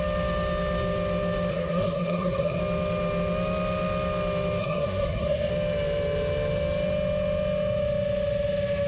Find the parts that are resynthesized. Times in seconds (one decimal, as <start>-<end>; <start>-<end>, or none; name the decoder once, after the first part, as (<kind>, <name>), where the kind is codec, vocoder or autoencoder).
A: 1.5-2.6 (codec, SNAC); 4.6-5.5